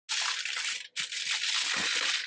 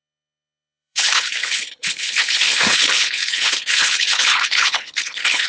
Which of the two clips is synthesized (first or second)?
second